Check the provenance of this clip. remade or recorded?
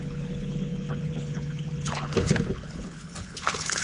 remade